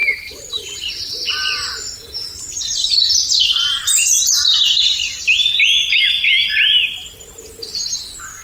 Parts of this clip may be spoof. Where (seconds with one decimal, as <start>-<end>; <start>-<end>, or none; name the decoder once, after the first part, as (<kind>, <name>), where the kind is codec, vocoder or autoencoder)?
0.0-4.2 (vocoder, BigVGAN v2)